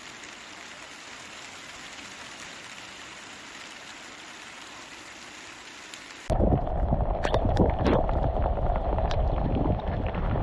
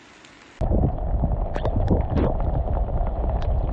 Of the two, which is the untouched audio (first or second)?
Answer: second